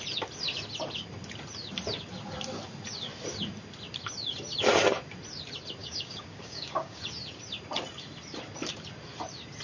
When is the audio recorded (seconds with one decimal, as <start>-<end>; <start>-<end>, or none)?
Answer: 0.0-5.8; 7.0-9.6